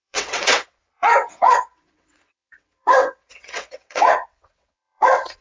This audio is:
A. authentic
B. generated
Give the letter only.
B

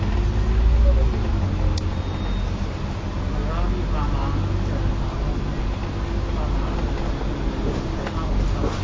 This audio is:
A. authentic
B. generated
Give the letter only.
A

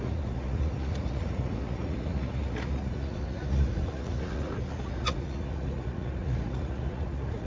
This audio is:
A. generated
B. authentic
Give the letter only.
A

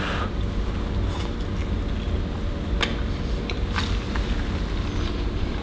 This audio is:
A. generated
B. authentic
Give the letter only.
B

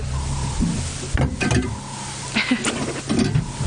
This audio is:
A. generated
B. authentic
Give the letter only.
B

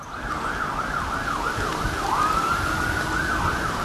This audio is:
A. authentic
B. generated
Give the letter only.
A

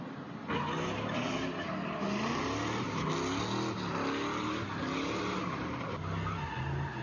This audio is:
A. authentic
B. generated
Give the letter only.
A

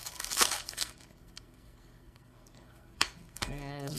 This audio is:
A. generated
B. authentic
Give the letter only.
A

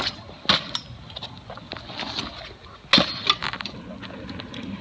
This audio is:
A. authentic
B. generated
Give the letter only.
A